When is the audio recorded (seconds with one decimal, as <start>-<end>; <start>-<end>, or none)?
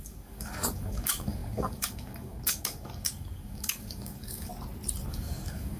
4.5-5.1